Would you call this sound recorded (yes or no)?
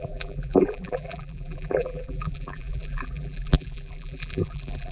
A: no